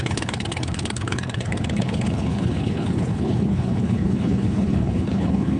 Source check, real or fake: fake